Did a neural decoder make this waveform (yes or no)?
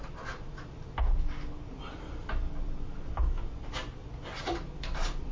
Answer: no